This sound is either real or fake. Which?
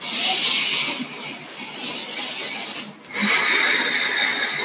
real